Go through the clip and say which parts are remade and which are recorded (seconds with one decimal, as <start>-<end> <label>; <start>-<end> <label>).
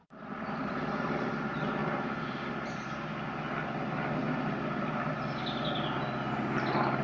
0.0-1.0 remade; 1.0-7.0 recorded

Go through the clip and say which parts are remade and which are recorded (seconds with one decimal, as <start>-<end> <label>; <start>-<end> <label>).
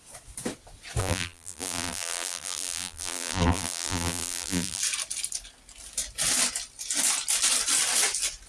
0.0-1.0 recorded; 1.0-4.8 remade; 4.8-8.5 recorded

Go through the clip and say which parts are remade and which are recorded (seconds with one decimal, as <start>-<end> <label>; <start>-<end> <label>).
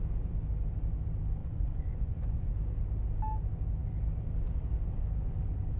0.0-1.4 recorded; 1.4-2.5 remade; 2.5-5.8 recorded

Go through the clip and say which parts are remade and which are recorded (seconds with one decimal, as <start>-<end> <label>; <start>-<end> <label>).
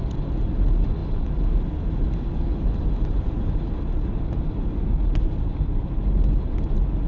0.0-7.1 recorded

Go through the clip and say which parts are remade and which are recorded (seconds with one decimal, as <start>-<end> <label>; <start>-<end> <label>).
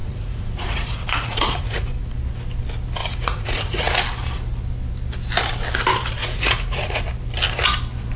0.0-1.9 remade; 1.9-3.0 recorded; 3.0-3.9 remade; 3.9-6.2 recorded; 6.2-7.0 remade; 7.0-8.2 recorded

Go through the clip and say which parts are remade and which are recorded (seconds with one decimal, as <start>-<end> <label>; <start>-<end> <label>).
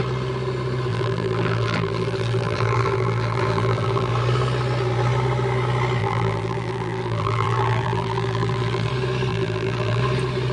0.0-0.9 recorded; 0.9-4.1 remade; 4.1-6.0 recorded; 6.0-8.9 remade; 8.9-9.3 recorded; 9.3-10.0 remade; 10.0-10.5 recorded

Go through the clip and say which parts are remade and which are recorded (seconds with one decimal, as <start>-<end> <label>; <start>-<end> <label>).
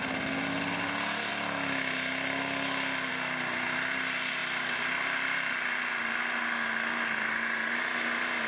0.0-8.5 recorded